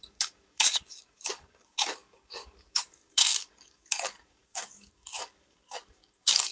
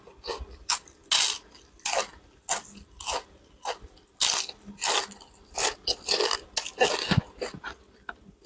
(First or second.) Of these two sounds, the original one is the second